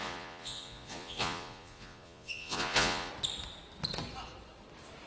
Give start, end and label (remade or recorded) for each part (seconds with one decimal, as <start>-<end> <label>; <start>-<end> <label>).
0.0-3.1 remade; 3.1-5.1 recorded